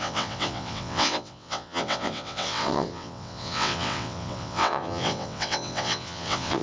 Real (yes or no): no